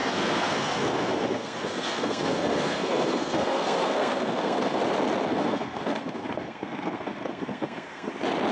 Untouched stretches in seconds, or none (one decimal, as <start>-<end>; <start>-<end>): 4.8-5.3; 8.1-8.5